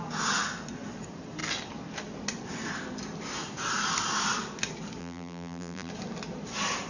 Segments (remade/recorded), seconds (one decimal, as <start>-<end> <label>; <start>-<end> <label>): 0.0-5.0 recorded; 5.0-5.9 remade; 5.9-6.9 recorded